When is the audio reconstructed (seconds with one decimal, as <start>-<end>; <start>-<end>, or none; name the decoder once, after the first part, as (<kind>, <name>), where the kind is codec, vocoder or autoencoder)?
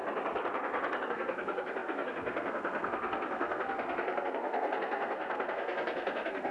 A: 1.1-6.5 (codec, SNAC)